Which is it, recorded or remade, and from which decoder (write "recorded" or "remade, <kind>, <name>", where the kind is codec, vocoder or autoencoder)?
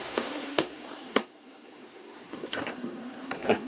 remade, codec, SNAC